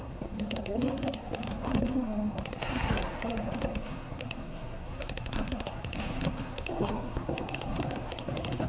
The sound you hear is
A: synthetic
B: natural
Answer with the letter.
A